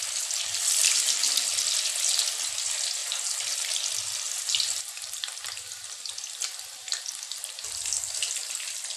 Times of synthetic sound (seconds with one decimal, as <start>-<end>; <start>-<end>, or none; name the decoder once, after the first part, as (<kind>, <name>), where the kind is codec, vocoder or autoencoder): none